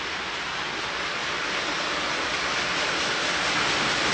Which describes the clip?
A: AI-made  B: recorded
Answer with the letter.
B